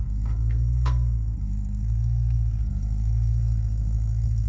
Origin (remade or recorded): remade